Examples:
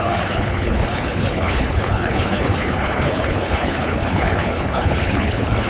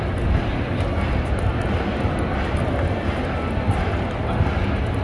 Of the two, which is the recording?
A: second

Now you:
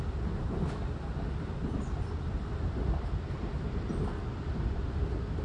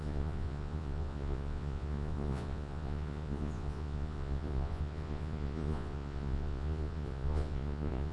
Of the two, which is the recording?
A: first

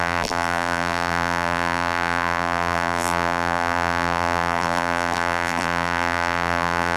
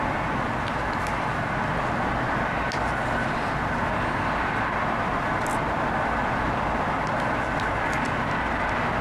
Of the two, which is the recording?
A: second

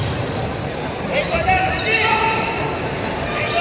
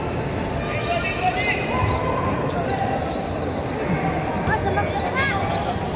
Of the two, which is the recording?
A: second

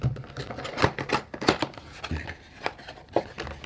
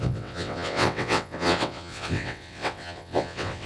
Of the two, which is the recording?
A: first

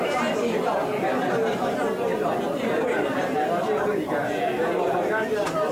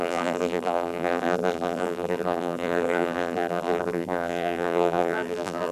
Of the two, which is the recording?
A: first